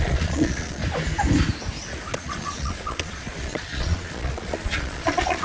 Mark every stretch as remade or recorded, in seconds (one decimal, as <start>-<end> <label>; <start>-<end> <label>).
0.0-0.8 remade; 0.8-2.1 recorded; 2.1-5.4 remade